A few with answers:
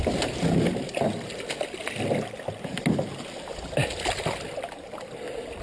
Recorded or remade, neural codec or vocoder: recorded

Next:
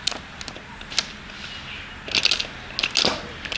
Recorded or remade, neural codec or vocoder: recorded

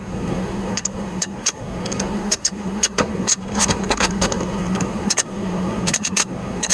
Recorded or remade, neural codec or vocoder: remade, codec, SNAC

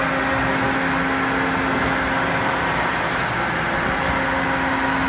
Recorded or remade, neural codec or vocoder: recorded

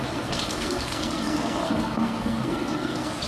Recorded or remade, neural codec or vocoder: remade, codec, SNAC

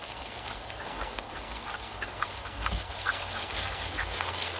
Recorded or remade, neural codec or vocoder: remade, codec, SNAC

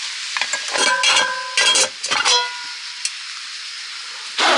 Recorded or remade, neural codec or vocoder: recorded